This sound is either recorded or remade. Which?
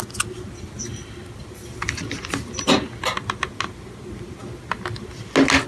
recorded